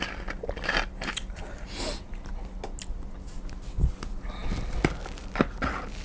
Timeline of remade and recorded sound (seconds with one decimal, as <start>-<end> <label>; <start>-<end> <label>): 0.0-6.0 recorded